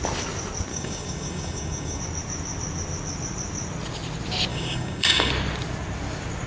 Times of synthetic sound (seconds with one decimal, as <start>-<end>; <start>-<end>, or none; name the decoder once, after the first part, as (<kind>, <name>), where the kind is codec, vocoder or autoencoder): 0.7-2.0 (codec, DAC); 4.5-5.3